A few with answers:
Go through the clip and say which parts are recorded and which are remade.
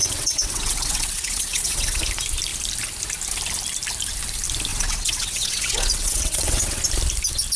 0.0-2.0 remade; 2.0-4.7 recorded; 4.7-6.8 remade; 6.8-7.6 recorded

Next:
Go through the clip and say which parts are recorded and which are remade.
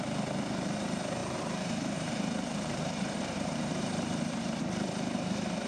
0.0-1.2 recorded; 1.2-4.6 remade; 4.6-5.7 recorded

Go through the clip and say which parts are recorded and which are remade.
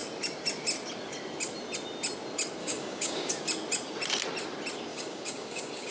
0.0-2.6 recorded; 2.6-3.3 remade; 3.3-4.9 recorded; 4.9-5.9 remade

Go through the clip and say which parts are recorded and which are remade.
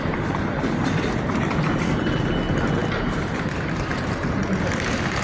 0.0-5.2 remade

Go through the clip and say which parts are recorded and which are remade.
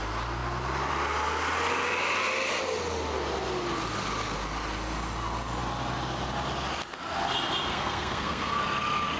0.0-7.7 recorded; 7.7-8.6 remade; 8.6-9.2 recorded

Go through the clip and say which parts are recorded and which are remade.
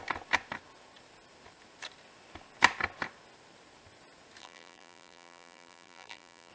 0.0-4.4 recorded; 4.4-6.5 remade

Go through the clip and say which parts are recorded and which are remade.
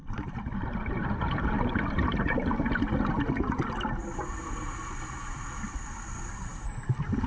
0.0-1.0 recorded; 1.0-2.5 remade; 2.5-7.3 recorded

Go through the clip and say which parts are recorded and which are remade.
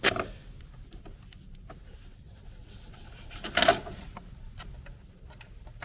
0.0-1.8 recorded; 1.8-3.0 remade; 3.0-5.8 recorded